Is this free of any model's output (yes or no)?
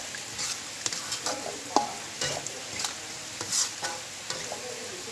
yes